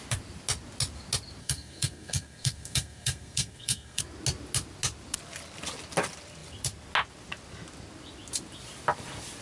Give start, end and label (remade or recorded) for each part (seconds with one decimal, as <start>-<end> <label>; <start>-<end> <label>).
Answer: 0.0-1.4 recorded; 1.4-4.0 remade; 4.0-9.4 recorded